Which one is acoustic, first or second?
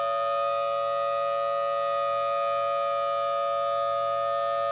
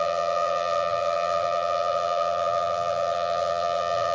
first